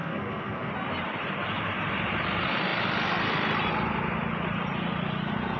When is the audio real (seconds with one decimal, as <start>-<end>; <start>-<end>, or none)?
0.7-5.6